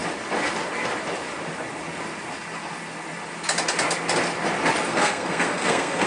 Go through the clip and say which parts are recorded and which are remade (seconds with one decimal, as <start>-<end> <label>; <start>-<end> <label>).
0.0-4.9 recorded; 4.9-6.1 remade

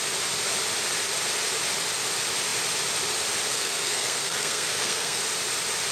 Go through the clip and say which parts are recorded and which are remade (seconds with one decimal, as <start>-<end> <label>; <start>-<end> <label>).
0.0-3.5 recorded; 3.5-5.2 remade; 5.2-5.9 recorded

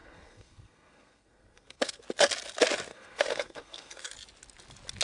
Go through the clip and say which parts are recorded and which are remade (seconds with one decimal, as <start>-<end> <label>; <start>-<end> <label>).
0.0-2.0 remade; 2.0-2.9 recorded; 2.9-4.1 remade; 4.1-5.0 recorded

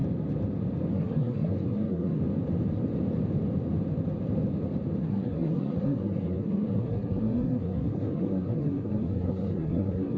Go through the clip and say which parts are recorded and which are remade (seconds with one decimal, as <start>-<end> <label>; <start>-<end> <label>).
0.0-0.9 recorded; 0.9-2.2 remade; 2.2-5.0 recorded; 5.0-10.2 remade

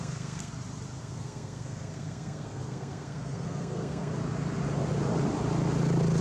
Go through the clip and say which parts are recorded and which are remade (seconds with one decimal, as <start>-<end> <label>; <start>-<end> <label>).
0.0-0.5 remade; 0.5-1.0 recorded; 1.0-4.1 remade; 4.1-6.2 recorded

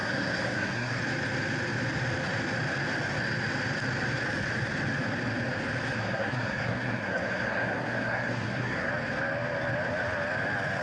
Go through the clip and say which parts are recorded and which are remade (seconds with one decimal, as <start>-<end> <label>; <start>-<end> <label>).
0.0-1.0 remade; 1.0-6.0 recorded; 6.0-8.9 remade; 8.9-10.8 recorded

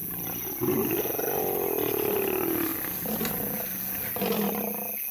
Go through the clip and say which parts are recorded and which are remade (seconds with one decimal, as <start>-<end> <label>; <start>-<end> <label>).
0.0-5.1 recorded